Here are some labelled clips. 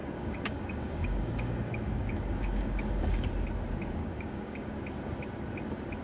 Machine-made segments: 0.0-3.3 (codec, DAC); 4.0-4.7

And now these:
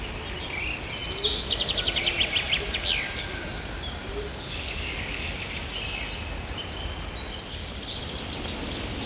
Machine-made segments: 4.3-5.4 (codec, DAC)

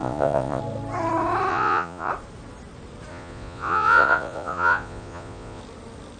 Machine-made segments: 0.0-0.6 (vocoder, Vocos); 1.5-2.1; 3.1-5.6

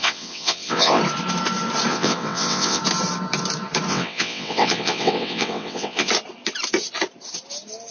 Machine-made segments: 0.0-1.0 (vocoder, WaveNeXt); 1.9-2.8; 3.9-6.1

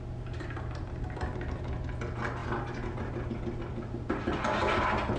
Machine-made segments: none